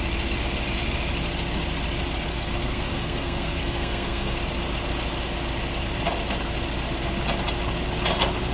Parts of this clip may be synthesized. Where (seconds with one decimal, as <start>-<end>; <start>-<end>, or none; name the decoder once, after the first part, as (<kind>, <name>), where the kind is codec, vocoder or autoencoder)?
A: 2.3-4.4 (codec, SNAC)